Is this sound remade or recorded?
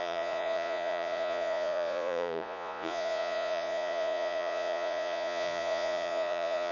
remade